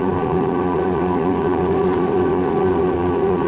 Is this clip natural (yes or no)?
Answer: no